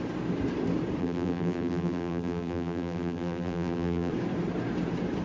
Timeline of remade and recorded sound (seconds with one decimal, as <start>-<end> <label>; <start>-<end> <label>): 0.0-1.0 recorded; 1.0-4.1 remade; 4.1-5.2 recorded